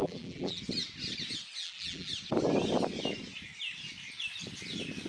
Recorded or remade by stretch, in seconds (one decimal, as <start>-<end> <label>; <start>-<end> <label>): 0.0-0.6 remade; 0.6-1.6 recorded; 1.6-2.1 remade; 2.1-5.1 recorded